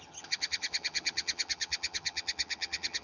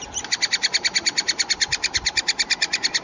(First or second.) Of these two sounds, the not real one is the first